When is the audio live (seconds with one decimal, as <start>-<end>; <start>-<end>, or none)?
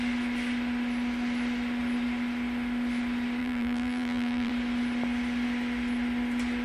0.0-3.4; 4.5-6.6